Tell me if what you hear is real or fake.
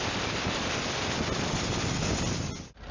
real